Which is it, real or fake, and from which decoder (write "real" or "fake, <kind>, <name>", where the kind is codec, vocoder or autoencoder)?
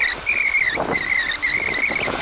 real